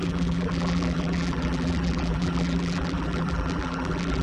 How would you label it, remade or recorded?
remade